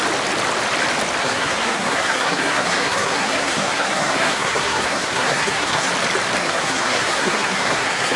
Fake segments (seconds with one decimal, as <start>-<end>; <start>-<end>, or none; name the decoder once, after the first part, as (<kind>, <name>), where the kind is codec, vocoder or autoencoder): 1.2-5.9 (codec, SNAC); 6.4-8.2